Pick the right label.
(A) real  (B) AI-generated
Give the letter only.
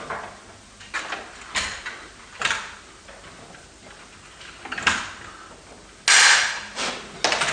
A